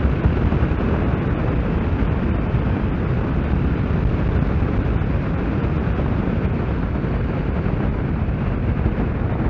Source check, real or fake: real